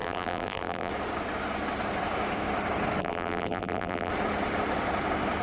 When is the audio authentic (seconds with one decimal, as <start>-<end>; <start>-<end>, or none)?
0.9-3.0; 4.1-5.4

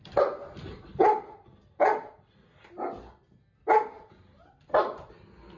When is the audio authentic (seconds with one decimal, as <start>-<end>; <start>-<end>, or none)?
0.0-5.6

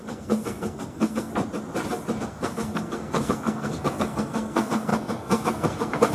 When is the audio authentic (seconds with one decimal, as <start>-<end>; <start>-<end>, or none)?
1.3-2.2

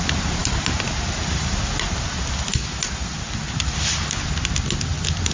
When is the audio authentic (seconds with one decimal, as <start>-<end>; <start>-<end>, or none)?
0.0-5.3

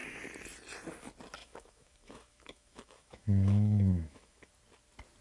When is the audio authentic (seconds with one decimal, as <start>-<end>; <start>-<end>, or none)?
0.0-1.4; 4.5-5.2

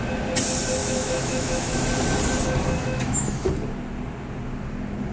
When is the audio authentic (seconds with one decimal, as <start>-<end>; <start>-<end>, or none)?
0.0-0.8; 1.8-2.8; 3.5-5.1